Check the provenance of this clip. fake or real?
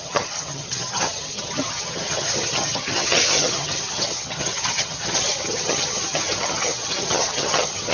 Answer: fake